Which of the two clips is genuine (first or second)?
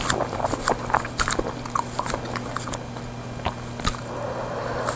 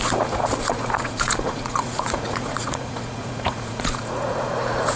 first